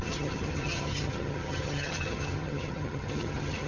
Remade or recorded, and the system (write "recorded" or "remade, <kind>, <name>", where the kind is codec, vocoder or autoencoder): remade, vocoder, HiFi-GAN